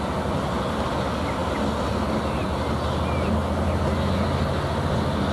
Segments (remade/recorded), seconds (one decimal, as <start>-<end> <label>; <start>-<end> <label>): 0.0-5.3 recorded